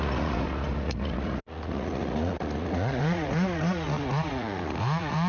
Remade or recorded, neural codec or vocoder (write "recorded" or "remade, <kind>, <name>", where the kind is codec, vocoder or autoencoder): remade, vocoder, Vocos